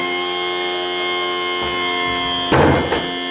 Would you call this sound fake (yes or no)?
no